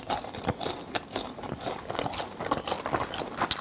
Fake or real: real